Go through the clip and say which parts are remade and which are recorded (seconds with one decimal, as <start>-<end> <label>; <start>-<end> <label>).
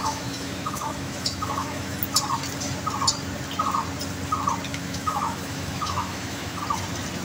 0.0-2.0 remade; 2.0-4.7 recorded; 4.7-6.6 remade; 6.6-7.2 recorded